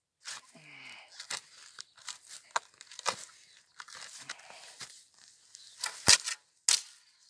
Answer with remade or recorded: recorded